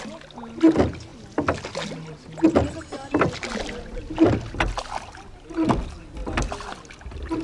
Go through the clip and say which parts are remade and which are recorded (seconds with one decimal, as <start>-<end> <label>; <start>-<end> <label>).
0.0-7.4 recorded